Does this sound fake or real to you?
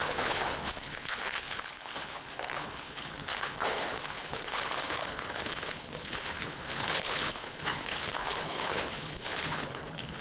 fake